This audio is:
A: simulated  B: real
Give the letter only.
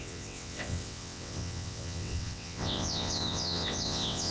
A